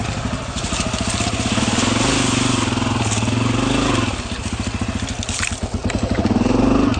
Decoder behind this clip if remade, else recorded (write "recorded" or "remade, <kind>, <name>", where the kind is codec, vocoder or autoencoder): recorded